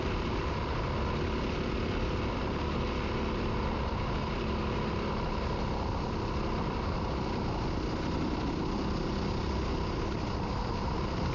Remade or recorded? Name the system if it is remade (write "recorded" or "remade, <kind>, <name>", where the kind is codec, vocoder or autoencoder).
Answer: recorded